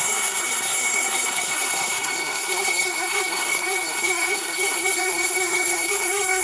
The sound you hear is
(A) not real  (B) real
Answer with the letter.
A